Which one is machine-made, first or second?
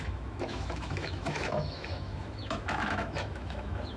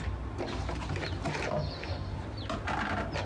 first